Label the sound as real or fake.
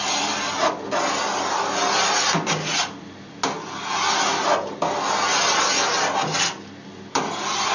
real